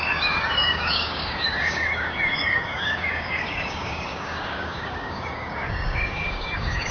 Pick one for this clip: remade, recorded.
remade